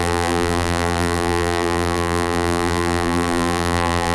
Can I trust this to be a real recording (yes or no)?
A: no